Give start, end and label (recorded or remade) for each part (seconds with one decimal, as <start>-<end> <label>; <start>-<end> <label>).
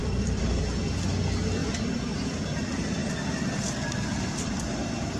0.0-0.6 remade; 0.6-5.2 recorded